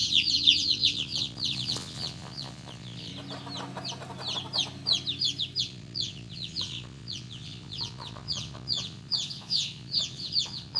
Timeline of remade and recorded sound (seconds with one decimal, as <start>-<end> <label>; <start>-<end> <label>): 0.0-3.1 remade; 3.1-5.6 recorded; 5.6-10.8 remade